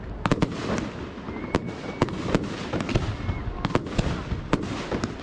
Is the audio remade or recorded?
recorded